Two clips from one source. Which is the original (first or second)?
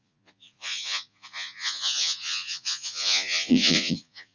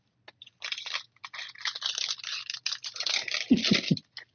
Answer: second